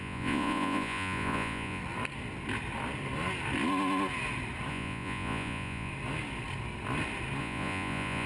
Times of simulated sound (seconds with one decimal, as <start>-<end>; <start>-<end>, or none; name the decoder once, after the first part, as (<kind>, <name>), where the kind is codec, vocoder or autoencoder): 0.0-1.8 (vocoder, Vocos); 4.7-5.9; 7.4-8.3